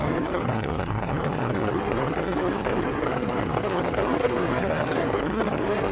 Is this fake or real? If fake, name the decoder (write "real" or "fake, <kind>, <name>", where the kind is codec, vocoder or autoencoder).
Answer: fake, codec, SNAC